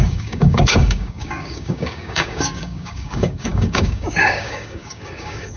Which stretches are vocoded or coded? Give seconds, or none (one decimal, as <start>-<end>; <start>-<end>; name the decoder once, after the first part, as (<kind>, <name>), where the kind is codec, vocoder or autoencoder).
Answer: 0.0-5.6 (codec, DAC)